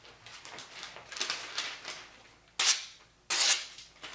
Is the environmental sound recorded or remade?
recorded